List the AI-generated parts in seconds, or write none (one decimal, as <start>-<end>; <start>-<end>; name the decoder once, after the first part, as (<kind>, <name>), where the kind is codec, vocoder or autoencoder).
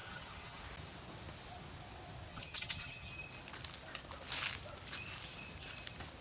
0.0-0.6 (vocoder, HiFi-GAN); 2.3-3.1